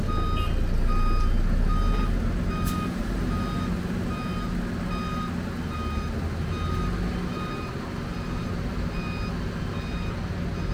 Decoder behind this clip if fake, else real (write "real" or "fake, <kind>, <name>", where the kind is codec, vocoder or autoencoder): real